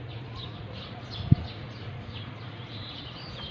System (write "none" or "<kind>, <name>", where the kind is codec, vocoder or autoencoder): vocoder, Vocos